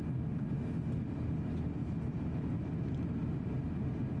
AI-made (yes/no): no